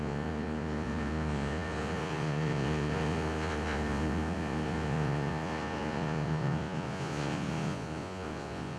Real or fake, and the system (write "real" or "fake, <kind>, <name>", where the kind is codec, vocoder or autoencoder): fake, vocoder, Vocos